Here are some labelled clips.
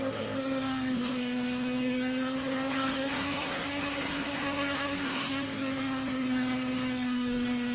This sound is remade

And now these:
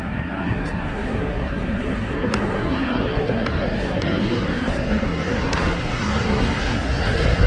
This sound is remade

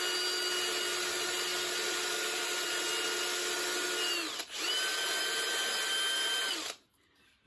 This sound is recorded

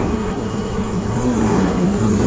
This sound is remade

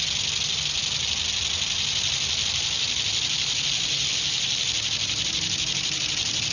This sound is recorded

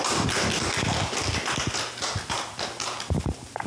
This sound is recorded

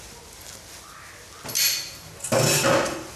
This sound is recorded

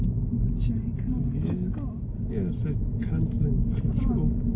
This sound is recorded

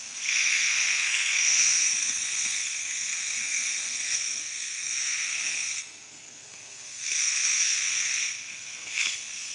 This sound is remade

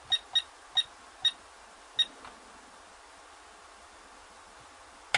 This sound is recorded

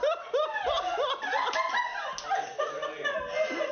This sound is recorded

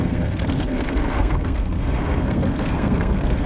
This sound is remade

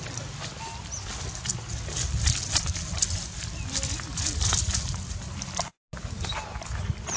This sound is recorded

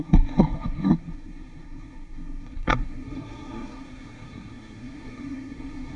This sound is remade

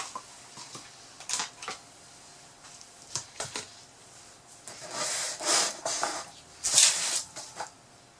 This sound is recorded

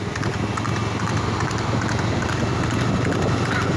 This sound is recorded